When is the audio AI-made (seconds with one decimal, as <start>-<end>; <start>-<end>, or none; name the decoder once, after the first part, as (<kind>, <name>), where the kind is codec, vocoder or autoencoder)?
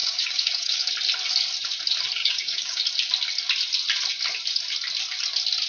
0.0-0.9 (codec, DAC); 2.2-2.8